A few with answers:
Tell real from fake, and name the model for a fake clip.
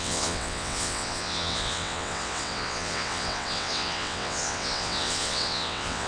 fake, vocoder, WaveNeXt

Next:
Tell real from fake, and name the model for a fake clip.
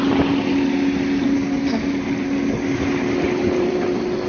real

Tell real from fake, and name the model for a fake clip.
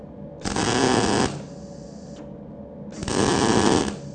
real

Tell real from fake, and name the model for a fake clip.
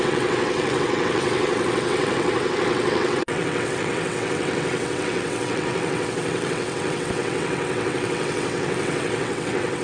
fake, vocoder, WaveNeXt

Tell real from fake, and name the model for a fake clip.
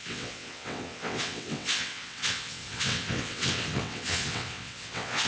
fake, vocoder, WaveNeXt